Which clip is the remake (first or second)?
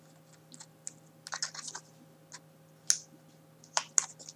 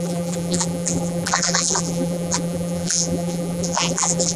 second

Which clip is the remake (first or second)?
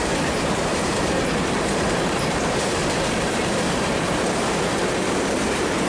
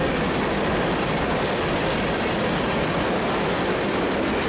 first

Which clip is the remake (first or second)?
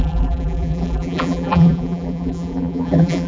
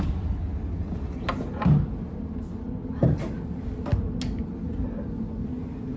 first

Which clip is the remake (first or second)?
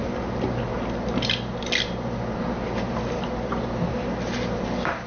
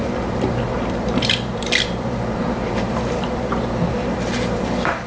second